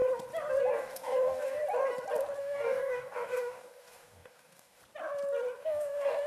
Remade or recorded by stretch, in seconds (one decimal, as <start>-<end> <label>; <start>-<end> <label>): 0.0-0.7 recorded; 0.7-1.6 remade; 1.6-2.4 recorded; 2.4-4.8 remade; 4.8-5.6 recorded; 5.6-6.3 remade